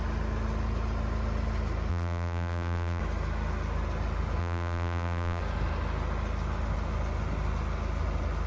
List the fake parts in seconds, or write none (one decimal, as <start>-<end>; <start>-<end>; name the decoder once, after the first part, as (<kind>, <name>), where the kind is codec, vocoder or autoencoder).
1.9-3.0 (vocoder, BigVGAN v2); 4.4-5.4